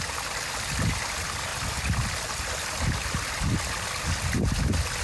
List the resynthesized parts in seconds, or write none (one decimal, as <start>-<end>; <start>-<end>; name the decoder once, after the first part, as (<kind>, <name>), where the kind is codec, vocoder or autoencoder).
none